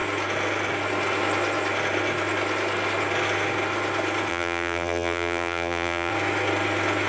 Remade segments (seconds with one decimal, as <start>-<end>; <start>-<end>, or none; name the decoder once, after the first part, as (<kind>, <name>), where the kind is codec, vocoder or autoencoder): 4.3-6.1 (vocoder, BigVGAN v2)